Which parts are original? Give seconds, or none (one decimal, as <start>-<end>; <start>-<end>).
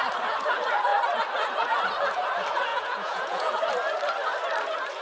0.0-2.7; 3.5-5.0